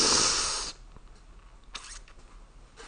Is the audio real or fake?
real